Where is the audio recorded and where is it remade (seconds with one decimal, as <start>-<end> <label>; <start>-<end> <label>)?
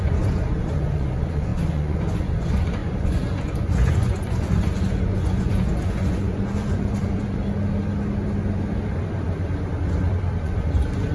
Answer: 0.0-7.4 remade; 7.4-10.4 recorded; 10.4-11.1 remade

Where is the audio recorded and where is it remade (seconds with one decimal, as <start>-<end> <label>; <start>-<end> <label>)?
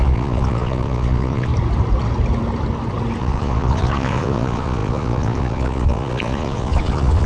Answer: 0.0-1.5 remade; 1.5-3.2 recorded; 3.2-7.3 remade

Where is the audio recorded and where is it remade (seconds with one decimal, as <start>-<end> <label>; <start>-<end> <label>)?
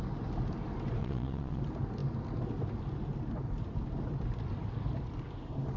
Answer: 0.0-1.0 recorded; 1.0-1.6 remade; 1.6-5.8 recorded